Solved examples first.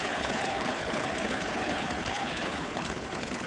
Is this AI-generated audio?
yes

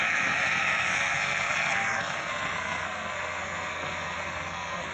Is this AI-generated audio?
yes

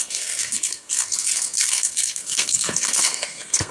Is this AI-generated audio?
yes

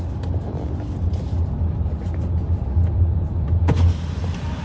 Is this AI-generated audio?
no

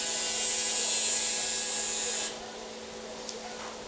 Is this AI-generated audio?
no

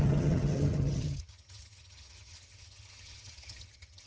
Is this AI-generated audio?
yes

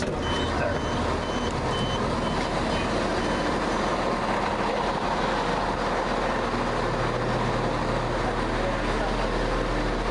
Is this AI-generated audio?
no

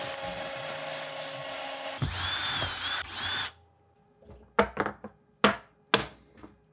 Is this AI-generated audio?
no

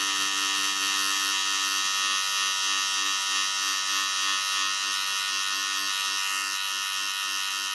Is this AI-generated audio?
no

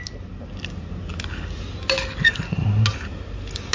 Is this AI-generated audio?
no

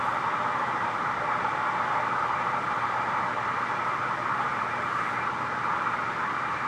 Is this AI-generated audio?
no